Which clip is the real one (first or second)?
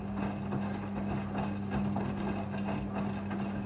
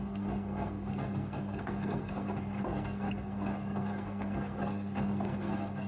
first